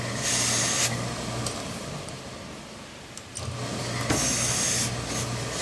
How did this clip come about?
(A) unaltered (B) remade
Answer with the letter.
A